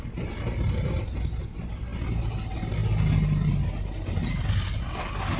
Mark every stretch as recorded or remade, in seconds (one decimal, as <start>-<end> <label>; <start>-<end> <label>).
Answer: 0.0-5.4 recorded